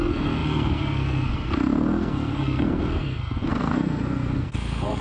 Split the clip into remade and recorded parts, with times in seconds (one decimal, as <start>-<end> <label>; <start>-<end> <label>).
0.0-5.0 remade